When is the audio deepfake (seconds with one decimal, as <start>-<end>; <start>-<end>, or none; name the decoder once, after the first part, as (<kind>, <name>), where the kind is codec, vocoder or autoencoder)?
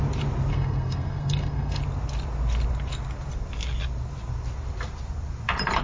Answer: 0.5-1.8 (codec, SNAC)